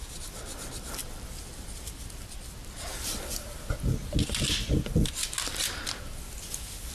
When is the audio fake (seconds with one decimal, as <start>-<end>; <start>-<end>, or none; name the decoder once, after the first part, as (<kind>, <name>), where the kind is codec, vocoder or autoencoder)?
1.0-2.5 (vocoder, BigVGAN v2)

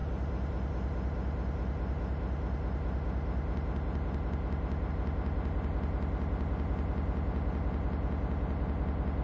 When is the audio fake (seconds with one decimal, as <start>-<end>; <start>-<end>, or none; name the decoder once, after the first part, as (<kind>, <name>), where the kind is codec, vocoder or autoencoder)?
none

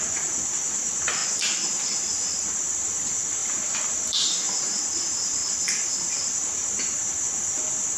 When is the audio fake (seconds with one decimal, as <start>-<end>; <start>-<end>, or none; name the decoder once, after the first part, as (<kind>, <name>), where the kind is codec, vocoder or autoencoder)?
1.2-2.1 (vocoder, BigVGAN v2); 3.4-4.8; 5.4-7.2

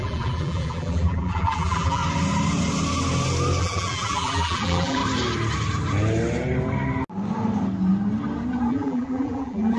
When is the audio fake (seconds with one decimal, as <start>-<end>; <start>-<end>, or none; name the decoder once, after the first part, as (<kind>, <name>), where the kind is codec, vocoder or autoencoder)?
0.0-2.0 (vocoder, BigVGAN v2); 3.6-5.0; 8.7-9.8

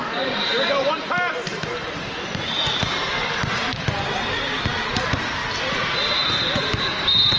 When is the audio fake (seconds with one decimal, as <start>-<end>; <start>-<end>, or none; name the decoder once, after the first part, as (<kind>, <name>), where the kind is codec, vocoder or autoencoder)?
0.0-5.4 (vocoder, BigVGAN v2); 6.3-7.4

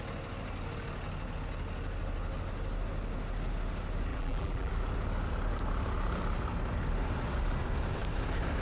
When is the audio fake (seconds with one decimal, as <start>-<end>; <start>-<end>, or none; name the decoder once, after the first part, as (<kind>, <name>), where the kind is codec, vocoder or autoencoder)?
4.1-4.7 (vocoder, BigVGAN v2)

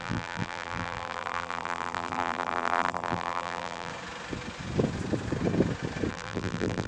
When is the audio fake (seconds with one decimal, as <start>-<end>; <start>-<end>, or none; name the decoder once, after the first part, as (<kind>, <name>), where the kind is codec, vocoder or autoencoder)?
0.0-3.9 (vocoder, BigVGAN v2); 6.1-6.9